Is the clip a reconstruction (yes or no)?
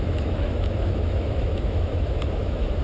yes